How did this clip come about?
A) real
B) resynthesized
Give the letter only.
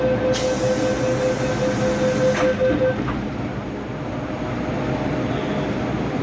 A